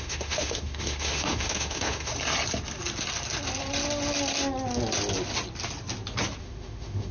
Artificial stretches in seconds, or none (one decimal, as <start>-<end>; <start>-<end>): 0.0-2.1; 6.4-7.1